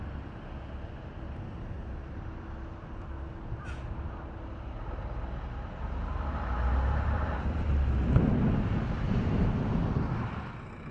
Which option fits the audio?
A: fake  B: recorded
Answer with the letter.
B